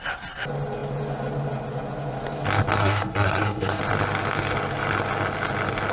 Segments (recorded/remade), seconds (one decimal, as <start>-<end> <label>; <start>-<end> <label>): 0.0-2.8 recorded; 2.8-3.8 remade; 3.8-5.9 recorded